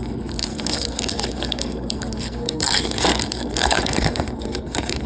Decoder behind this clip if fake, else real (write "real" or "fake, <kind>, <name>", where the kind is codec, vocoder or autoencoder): fake, codec, SNAC